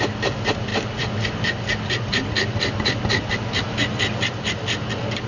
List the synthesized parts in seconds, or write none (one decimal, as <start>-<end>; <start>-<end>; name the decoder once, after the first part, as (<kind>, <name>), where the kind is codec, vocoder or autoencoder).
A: none